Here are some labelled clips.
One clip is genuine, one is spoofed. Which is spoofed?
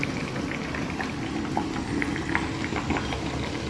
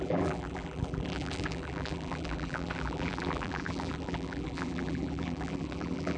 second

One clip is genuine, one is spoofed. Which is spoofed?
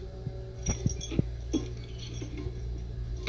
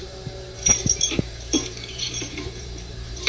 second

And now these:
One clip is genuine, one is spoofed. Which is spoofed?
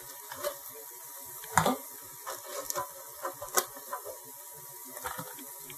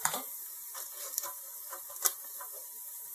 second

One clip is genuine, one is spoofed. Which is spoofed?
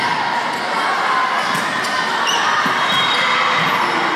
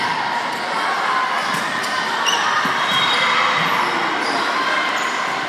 second